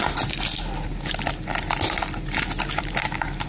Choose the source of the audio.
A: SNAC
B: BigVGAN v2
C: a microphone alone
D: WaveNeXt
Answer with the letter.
C